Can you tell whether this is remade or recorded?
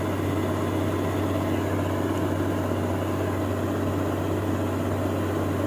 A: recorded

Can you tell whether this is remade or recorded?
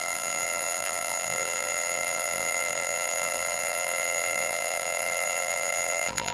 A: remade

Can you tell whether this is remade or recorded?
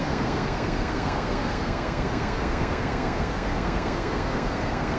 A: remade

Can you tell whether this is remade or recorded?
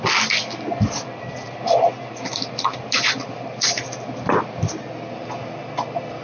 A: recorded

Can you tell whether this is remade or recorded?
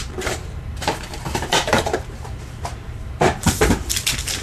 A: remade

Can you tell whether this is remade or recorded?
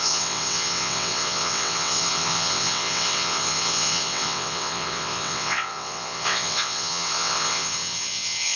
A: remade